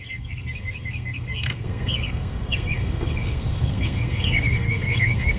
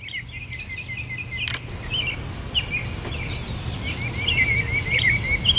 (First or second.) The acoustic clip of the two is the second